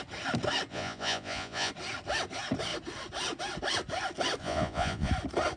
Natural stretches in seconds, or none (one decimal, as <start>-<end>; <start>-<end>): 0.0-0.7; 1.7-4.4; 5.1-5.6